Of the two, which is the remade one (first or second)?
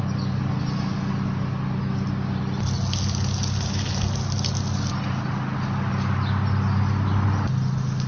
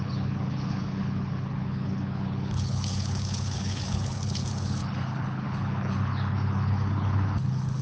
second